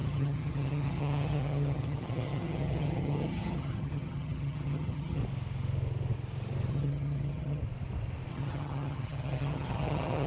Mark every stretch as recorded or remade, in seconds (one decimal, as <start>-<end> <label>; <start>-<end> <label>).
0.0-5.2 remade; 5.2-6.7 recorded; 6.7-7.6 remade; 7.6-8.3 recorded; 8.3-10.3 remade